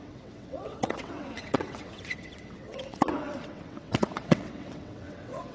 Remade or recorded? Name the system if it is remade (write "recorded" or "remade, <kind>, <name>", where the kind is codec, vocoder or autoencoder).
remade, vocoder, WaveNeXt